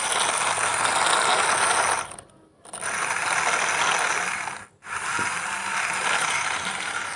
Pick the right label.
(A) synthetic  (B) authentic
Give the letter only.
B